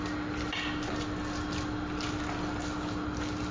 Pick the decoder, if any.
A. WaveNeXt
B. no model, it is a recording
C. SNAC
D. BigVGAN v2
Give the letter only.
B